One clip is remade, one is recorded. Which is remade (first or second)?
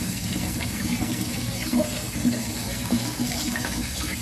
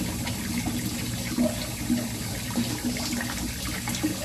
first